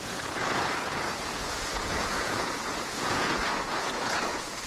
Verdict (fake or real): fake